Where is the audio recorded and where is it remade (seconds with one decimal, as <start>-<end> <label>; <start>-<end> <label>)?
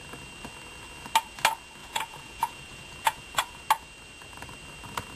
0.0-1.8 recorded; 1.8-3.6 remade; 3.6-5.2 recorded